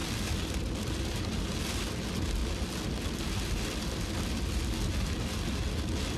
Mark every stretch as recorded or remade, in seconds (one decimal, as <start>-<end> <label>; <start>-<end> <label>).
0.0-1.4 remade; 1.4-6.2 recorded